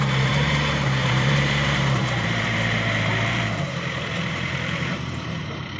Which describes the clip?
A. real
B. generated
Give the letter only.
B